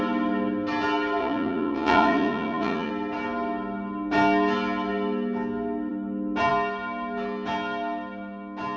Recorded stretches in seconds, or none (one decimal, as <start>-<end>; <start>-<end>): 0.0-1.2; 2.9-8.8